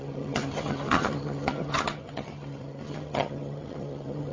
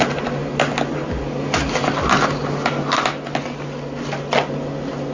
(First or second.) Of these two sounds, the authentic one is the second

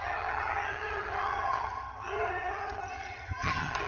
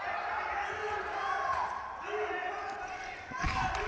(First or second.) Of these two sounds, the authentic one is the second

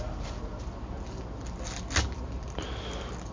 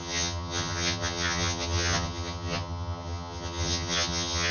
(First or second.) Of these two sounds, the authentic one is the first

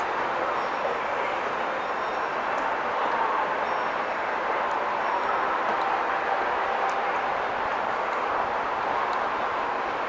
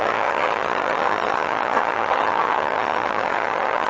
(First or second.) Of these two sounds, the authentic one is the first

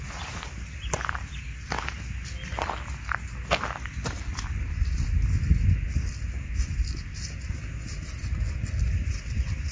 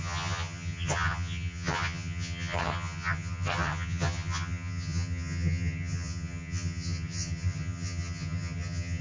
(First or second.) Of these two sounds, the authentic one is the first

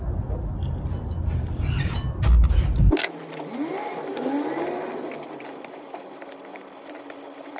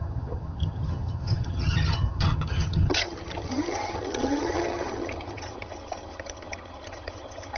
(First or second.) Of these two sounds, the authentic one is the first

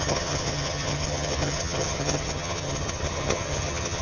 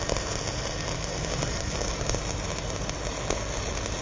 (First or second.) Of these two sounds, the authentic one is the second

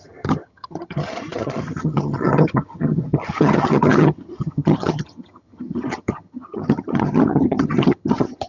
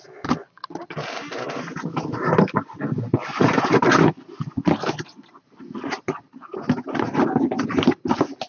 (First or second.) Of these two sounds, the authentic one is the second